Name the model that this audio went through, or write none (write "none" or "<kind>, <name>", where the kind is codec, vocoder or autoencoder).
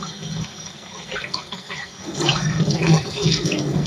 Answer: codec, SNAC